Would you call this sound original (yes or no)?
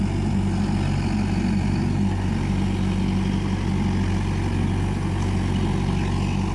yes